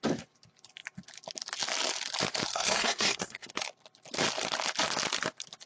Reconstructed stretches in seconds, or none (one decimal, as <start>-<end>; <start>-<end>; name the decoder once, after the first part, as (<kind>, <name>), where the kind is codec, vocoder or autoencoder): 2.5-3.5 (codec, SNAC)